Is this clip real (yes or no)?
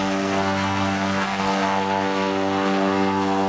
no